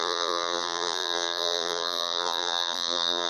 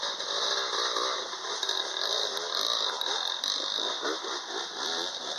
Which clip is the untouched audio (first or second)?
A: second